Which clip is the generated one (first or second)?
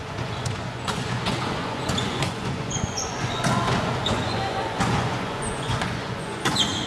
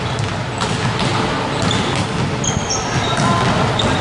first